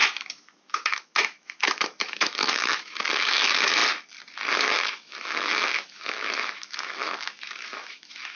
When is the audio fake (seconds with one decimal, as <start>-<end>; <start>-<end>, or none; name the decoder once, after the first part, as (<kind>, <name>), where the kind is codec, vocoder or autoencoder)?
0.0-3.8 (autoencoder, DAC-VAE); 4.5-8.3